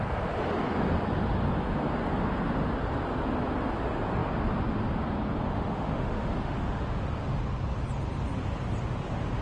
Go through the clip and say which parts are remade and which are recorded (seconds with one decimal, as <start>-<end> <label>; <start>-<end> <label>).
0.0-5.5 recorded; 5.5-7.4 remade; 7.4-9.4 recorded